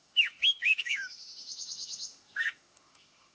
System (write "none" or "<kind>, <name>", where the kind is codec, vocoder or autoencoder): autoencoder, DAC-VAE